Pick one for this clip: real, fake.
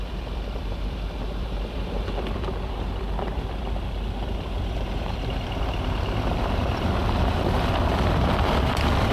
fake